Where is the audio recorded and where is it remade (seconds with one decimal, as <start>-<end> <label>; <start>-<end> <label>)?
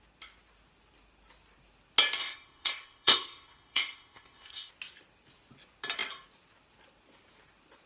0.0-2.2 recorded; 2.2-4.7 remade; 4.7-7.9 recorded